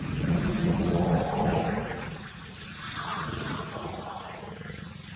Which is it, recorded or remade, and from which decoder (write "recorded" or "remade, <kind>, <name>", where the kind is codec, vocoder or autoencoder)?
remade, vocoder, Vocos